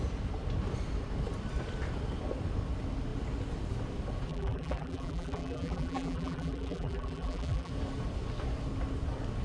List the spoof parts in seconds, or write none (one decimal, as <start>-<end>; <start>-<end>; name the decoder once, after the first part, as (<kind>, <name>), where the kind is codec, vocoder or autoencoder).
4.3-7.7 (vocoder, BigVGAN v2)